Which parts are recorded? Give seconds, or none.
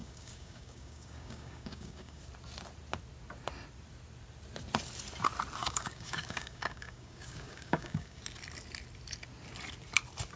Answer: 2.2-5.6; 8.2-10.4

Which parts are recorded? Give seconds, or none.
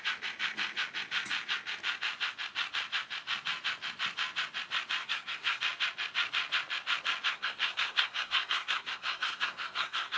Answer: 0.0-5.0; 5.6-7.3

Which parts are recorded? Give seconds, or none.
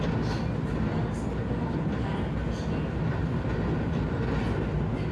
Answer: 0.0-5.1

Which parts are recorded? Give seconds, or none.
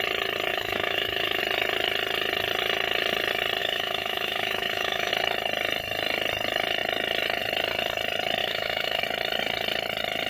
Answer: 0.0-0.5; 1.4-3.6; 5.1-8.4; 9.0-10.3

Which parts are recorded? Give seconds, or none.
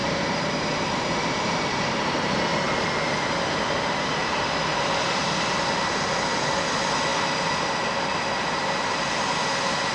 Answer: 2.4-4.2; 5.2-9.9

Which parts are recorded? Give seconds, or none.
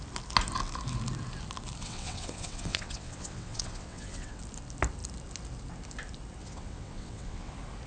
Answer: 0.0-1.8; 4.4-6.4; 7.5-7.9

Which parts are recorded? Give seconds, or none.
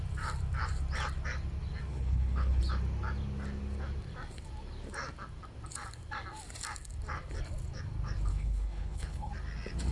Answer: 0.0-1.9; 2.6-8.3; 9.3-9.9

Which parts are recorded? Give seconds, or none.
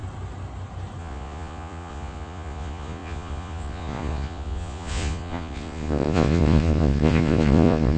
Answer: 0.0-1.0